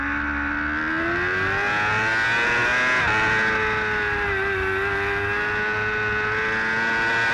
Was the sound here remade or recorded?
recorded